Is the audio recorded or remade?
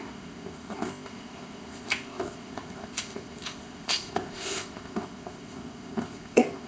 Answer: remade